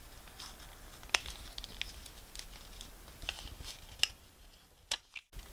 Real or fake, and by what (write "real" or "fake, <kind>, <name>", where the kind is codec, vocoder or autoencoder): real